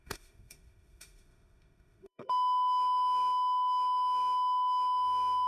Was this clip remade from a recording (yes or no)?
yes